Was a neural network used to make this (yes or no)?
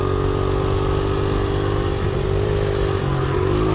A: no